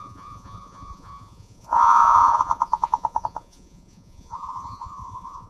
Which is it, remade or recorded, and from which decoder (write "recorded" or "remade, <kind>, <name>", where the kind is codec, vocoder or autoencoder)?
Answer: remade, vocoder, Vocos